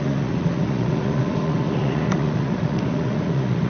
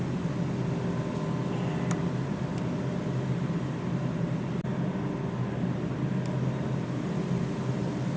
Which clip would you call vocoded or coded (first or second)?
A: first